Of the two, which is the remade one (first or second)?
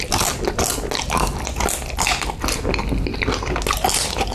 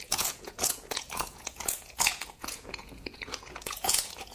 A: second